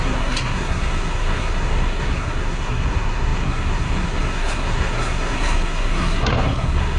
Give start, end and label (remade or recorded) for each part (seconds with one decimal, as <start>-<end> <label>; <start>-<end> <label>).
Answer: 0.0-7.0 remade